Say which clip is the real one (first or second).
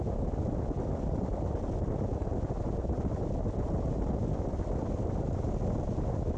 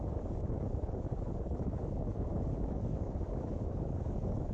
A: first